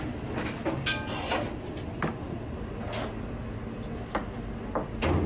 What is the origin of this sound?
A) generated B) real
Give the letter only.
B